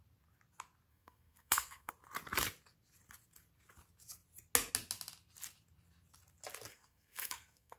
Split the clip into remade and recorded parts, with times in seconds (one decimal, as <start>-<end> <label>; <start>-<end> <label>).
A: 0.0-0.9 recorded; 0.9-1.9 remade; 1.9-6.7 recorded; 6.7-7.8 remade